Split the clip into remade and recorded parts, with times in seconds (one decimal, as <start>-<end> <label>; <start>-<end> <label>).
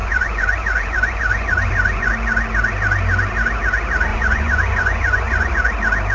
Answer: 0.0-2.1 remade; 2.1-4.1 recorded; 4.1-5.5 remade; 5.5-6.1 recorded